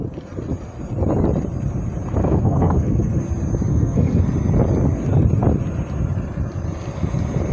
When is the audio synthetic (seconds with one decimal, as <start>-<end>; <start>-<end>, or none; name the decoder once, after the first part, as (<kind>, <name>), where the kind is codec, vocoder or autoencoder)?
2.2-3.2 (codec, SNAC); 3.7-4.2